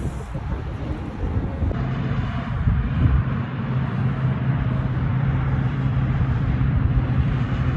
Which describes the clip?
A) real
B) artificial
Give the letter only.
B